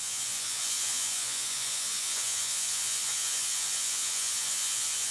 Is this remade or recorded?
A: remade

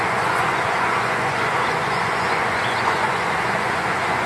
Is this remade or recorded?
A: remade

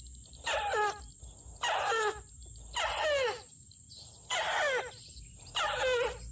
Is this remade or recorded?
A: recorded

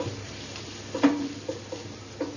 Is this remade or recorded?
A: recorded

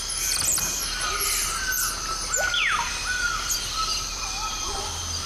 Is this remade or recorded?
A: recorded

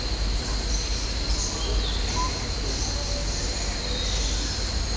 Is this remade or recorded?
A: recorded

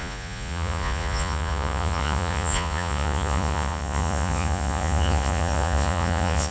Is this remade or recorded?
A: remade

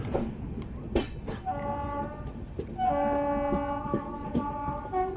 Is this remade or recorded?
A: recorded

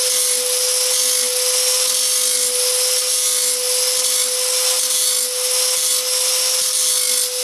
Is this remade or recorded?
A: recorded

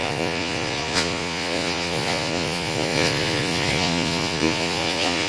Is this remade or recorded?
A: remade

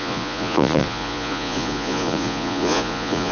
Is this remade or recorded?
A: remade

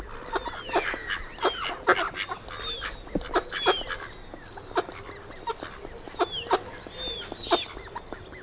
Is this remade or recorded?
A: recorded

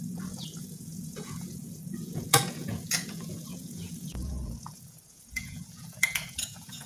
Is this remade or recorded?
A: remade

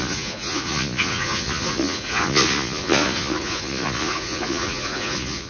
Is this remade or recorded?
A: remade